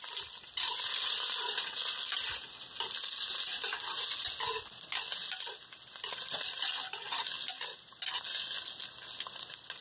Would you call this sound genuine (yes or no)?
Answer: yes